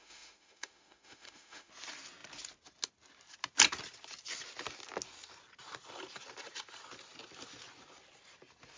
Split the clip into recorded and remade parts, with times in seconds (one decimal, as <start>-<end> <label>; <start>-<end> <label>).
0.0-1.7 remade; 1.7-8.8 recorded